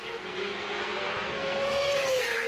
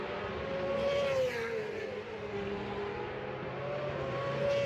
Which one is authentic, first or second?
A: second